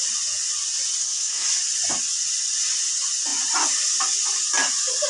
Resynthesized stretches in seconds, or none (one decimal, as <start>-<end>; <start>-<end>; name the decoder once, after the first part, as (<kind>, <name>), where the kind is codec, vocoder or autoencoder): 1.0-1.5 (codec, SNAC)